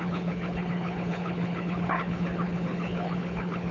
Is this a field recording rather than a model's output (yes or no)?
no